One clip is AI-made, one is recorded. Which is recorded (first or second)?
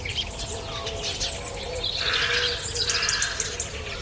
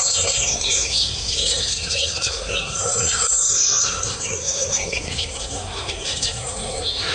first